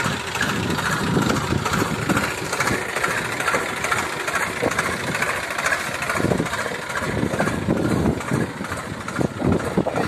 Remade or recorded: recorded